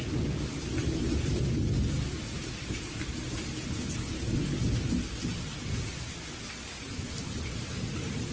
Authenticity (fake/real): real